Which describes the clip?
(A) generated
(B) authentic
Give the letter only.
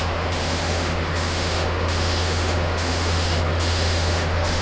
A